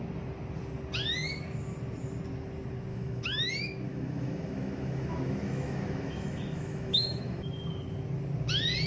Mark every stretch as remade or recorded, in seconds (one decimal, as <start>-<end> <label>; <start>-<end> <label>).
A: 0.0-2.9 recorded; 2.9-3.5 remade; 3.5-3.9 recorded; 3.9-7.5 remade; 7.5-8.9 recorded